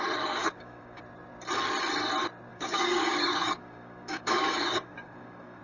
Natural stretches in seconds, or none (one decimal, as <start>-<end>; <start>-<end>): 0.0-0.4; 1.0-2.5